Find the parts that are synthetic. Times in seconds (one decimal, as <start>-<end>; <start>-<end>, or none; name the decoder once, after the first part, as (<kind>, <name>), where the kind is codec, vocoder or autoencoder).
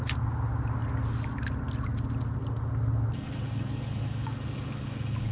none